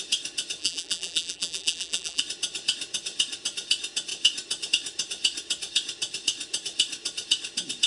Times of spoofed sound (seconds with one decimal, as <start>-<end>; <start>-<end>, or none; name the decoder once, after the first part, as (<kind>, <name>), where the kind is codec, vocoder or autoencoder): 0.6-2.2 (vocoder, BigVGAN v2)